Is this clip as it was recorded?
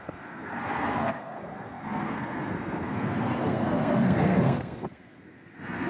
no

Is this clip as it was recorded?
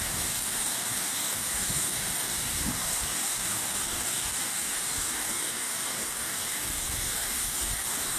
no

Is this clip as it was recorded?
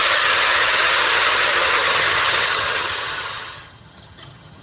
no